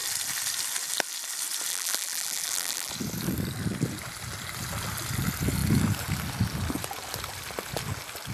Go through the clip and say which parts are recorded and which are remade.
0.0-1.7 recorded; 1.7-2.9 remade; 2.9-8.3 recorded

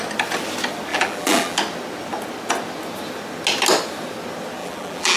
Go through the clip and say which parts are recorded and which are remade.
0.0-0.9 recorded; 0.9-1.6 remade; 1.6-4.6 recorded; 4.6-5.2 remade